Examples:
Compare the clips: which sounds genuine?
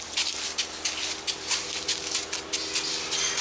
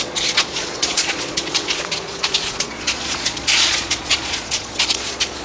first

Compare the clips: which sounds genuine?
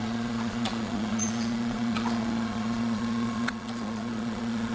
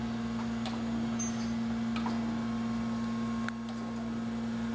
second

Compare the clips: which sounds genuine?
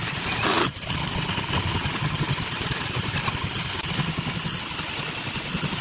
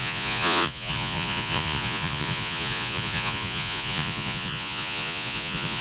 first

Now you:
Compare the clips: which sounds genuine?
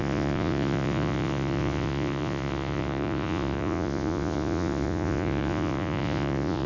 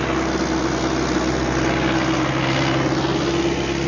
second